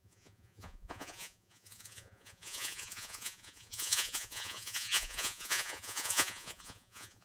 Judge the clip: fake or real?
fake